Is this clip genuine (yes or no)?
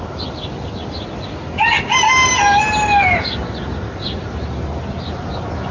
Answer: yes